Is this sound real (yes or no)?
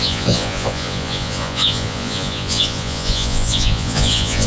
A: no